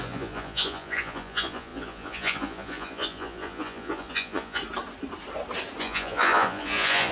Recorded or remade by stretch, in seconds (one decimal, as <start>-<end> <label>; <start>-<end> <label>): 0.0-4.6 remade; 4.6-5.8 recorded; 5.8-7.1 remade